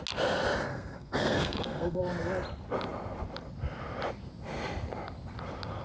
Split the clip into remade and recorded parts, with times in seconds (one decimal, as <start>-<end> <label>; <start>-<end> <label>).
0.0-0.7 recorded; 0.7-2.0 remade; 2.0-5.8 recorded